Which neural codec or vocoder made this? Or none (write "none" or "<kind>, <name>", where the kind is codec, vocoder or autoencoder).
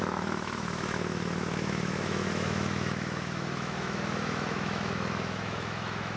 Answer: autoencoder, DAC-VAE